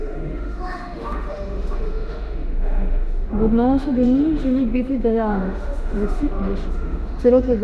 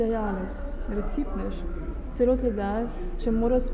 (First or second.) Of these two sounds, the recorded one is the second